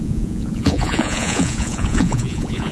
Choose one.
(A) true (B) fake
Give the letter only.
B